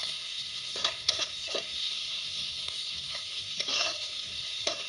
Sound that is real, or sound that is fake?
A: fake